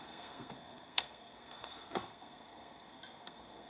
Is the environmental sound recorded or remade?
remade